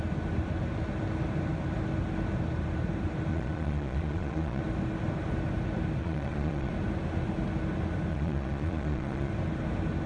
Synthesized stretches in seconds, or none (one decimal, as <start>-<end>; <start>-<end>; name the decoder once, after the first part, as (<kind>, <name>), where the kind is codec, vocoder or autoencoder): 3.3-4.6 (vocoder, Vocos); 6.0-6.7; 8.1-9.3